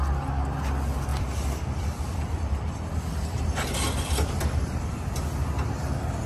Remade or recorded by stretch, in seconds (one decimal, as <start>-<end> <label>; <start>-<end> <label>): 0.0-1.1 recorded; 1.1-4.9 remade; 4.9-6.3 recorded